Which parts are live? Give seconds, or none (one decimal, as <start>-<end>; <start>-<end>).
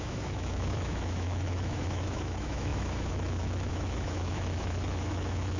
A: none